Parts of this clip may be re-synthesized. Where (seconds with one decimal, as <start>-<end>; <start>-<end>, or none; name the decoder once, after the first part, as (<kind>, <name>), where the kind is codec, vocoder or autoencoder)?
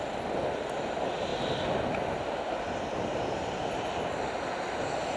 none